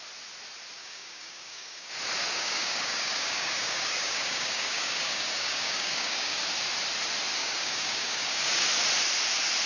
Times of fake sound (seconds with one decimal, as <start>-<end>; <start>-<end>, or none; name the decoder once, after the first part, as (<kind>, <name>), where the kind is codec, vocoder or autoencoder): 0.8-1.9 (codec, DAC); 2.3-6.4; 7.4-8.7